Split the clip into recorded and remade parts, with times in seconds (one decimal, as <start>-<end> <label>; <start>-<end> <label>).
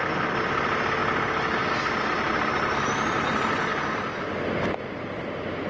0.0-5.7 recorded